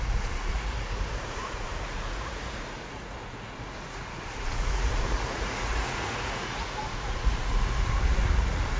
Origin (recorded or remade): remade